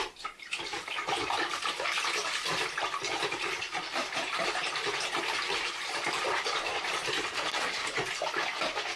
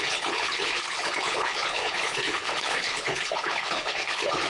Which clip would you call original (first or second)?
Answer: first